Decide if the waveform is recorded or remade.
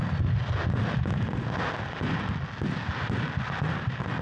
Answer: recorded